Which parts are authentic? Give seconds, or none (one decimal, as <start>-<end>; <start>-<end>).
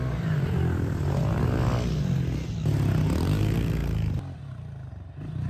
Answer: 0.0-5.5